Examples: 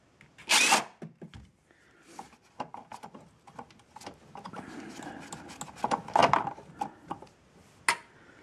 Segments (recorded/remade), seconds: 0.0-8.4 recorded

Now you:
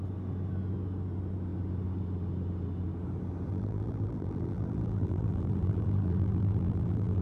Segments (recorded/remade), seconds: 0.0-3.5 recorded; 3.5-7.2 remade